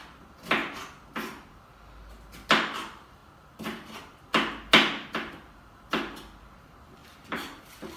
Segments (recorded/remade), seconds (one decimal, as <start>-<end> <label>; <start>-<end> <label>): 0.0-3.2 recorded; 3.2-4.2 remade; 4.2-7.0 recorded; 7.0-8.0 remade